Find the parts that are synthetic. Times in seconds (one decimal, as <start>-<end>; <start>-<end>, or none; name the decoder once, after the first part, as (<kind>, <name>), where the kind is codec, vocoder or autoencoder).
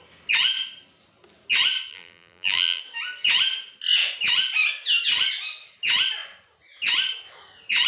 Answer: 1.9-2.8 (vocoder, BigVGAN v2)